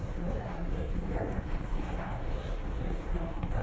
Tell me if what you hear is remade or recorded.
remade